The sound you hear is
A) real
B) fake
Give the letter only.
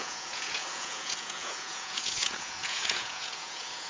B